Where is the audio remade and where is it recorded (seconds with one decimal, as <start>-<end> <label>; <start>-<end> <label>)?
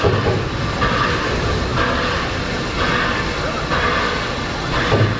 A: 0.0-5.2 recorded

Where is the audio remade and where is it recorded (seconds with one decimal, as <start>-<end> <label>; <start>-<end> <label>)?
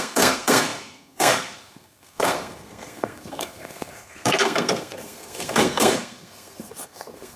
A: 0.0-7.4 remade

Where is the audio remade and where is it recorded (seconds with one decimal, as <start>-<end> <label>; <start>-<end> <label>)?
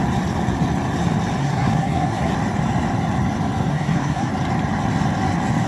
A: 0.0-1.4 recorded; 1.4-2.3 remade; 2.3-3.7 recorded; 3.7-4.3 remade; 4.3-5.7 recorded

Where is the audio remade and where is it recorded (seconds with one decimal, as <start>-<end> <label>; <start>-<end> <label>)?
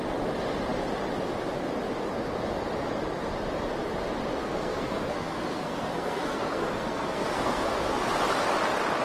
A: 0.0-4.4 recorded; 4.4-8.1 remade; 8.1-9.0 recorded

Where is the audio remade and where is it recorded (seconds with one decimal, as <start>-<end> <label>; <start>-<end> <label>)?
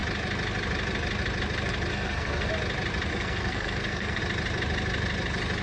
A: 0.0-1.9 recorded; 1.9-2.5 remade; 2.5-3.1 recorded; 3.1-4.2 remade; 4.2-5.6 recorded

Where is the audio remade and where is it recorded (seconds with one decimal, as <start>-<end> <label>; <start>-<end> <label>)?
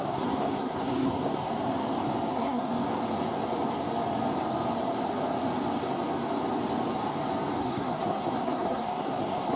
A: 0.0-1.5 remade; 1.5-2.3 recorded; 2.3-2.7 remade; 2.7-7.6 recorded; 7.6-9.6 remade